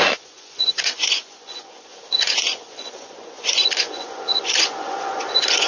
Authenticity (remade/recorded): remade